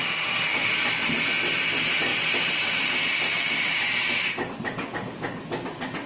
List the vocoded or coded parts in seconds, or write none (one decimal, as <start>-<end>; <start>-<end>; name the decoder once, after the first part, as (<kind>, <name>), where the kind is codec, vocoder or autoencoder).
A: none